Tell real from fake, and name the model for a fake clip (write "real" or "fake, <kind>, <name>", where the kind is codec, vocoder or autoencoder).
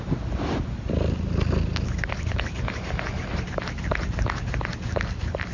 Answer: real